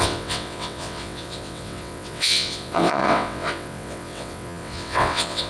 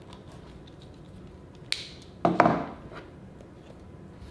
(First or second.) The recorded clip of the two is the second